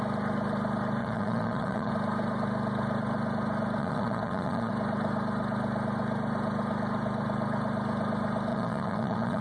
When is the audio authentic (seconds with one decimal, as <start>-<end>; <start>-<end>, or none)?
0.0-1.0; 1.9-3.8; 4.7-8.5